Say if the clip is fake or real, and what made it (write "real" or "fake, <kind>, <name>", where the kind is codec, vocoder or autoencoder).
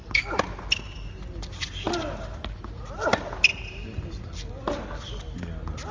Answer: real